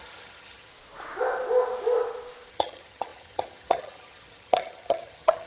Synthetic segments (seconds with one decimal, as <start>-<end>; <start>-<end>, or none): 0.0-0.7; 2.5-5.5